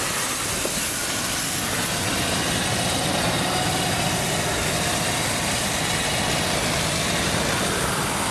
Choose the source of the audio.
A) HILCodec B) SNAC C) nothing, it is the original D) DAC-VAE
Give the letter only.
C